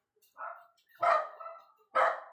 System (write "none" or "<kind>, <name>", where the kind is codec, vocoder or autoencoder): none